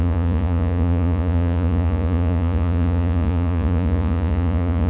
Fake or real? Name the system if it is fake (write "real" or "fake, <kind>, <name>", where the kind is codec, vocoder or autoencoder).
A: fake, vocoder, Vocos